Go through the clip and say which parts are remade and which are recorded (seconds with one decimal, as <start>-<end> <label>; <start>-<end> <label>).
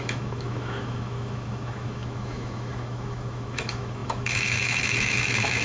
0.0-5.6 remade